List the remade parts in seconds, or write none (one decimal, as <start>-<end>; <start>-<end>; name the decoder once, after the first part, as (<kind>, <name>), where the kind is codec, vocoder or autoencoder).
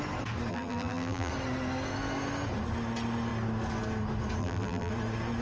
0.5-1.3 (vocoder, BigVGAN v2); 4.4-4.9